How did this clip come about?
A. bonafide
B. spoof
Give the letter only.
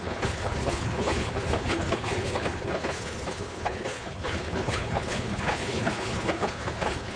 B